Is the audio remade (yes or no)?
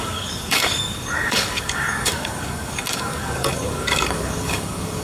yes